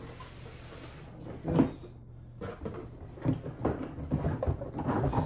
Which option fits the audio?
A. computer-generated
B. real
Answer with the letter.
B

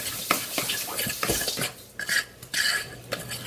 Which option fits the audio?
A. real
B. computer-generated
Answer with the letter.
A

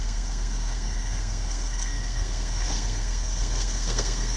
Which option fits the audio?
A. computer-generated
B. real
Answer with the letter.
A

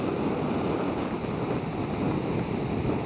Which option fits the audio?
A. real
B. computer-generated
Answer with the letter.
A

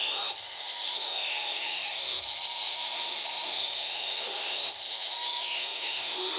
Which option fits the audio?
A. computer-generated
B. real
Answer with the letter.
A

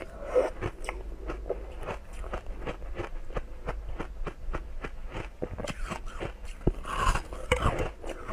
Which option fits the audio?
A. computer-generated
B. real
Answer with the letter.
B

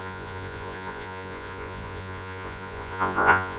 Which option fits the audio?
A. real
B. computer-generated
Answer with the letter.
B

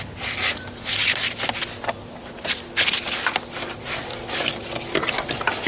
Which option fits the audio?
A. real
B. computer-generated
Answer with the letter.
A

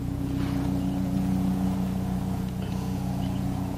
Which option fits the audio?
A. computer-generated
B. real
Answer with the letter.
A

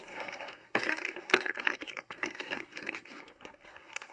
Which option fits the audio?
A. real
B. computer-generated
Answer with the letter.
B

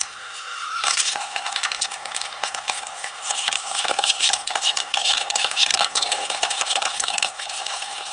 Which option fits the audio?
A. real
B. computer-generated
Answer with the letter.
B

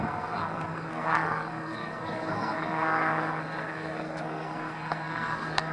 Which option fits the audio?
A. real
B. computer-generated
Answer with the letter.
B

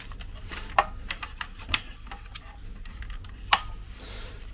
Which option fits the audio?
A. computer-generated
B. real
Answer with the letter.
A